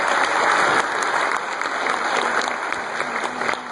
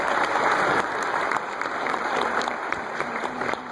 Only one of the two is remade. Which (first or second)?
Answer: second